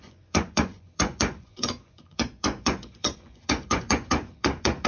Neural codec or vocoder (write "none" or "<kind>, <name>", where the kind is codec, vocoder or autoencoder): vocoder, Vocos